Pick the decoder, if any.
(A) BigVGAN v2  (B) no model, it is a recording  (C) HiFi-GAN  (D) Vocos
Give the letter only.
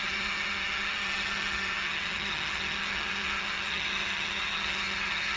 C